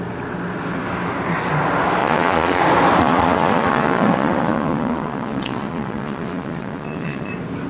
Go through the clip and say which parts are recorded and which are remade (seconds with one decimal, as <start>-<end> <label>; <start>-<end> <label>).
0.0-2.0 recorded; 2.0-2.6 remade; 2.6-3.0 recorded; 3.0-7.3 remade; 7.3-7.7 recorded